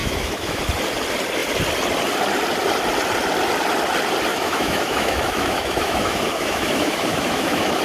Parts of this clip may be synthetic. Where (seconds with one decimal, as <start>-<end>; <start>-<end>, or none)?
0.0-0.6; 4.3-7.8